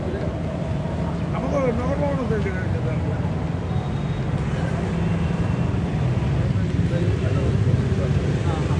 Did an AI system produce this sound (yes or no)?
no